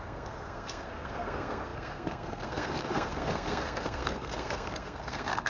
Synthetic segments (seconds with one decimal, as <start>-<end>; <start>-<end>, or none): 0.0-5.5